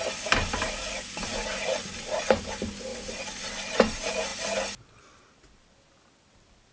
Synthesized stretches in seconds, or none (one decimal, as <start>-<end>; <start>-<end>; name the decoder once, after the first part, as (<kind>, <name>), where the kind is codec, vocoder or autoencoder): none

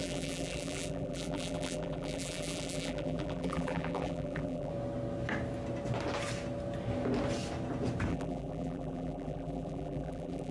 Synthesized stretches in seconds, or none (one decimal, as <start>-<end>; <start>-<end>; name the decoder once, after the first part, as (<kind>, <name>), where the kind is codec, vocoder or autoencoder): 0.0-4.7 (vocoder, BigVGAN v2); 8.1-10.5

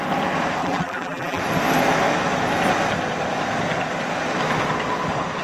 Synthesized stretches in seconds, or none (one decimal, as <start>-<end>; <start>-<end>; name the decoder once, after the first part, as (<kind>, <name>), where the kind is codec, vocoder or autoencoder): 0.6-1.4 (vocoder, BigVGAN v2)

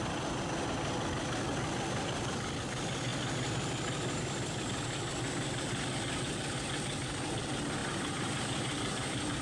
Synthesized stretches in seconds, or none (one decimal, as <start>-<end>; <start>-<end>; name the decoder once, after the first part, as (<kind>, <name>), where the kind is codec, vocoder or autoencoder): 7.8-9.4 (vocoder, BigVGAN v2)

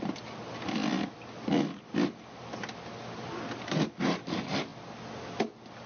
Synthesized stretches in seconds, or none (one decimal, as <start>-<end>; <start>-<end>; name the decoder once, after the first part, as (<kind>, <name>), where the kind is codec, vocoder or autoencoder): none

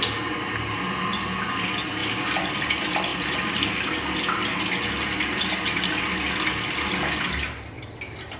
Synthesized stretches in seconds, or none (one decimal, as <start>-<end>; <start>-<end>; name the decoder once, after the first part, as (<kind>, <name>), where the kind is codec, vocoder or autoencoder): 3.1-3.7 (vocoder, BigVGAN v2)